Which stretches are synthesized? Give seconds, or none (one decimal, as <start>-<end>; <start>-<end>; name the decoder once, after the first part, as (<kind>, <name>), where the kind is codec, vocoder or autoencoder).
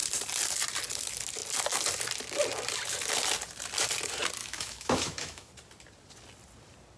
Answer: 4.4-5.5 (autoencoder, DAC-VAE)